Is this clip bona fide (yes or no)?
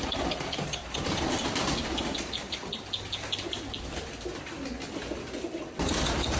yes